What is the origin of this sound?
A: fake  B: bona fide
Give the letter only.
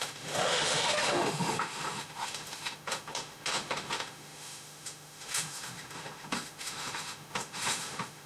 A